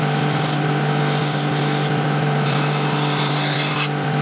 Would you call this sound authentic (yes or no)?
yes